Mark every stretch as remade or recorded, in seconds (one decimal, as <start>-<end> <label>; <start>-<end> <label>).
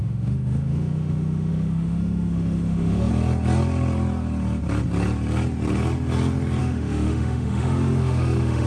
0.0-3.1 remade; 3.1-6.6 recorded; 6.6-8.7 remade